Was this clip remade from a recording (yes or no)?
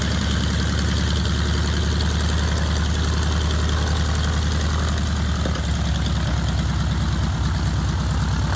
no